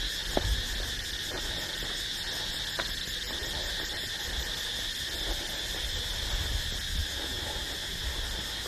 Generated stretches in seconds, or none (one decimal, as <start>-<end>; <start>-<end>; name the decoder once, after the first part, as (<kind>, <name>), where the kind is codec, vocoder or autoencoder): none